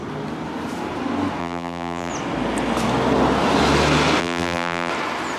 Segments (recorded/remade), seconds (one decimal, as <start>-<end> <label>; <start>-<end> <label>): 0.0-1.4 recorded; 1.4-2.1 remade; 2.1-4.2 recorded; 4.2-4.9 remade; 4.9-5.4 recorded